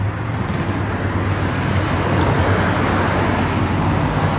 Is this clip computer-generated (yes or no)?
no